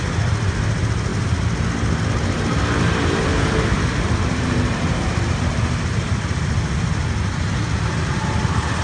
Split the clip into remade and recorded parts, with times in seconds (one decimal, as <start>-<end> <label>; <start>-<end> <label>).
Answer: 0.0-3.3 recorded; 3.3-8.2 remade; 8.2-8.8 recorded